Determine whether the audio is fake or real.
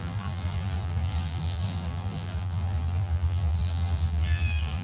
fake